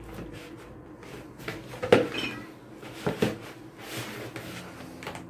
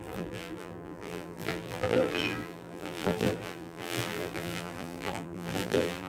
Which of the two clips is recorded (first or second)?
first